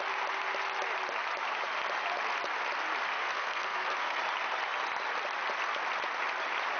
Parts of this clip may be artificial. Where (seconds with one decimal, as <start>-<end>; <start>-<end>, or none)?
3.2-4.2